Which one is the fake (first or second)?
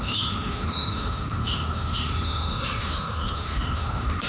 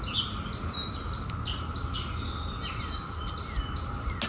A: first